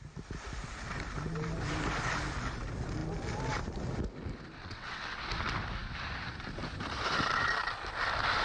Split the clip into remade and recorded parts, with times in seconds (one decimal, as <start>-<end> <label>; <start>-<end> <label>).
0.0-4.6 recorded; 4.6-5.2 remade; 5.2-8.4 recorded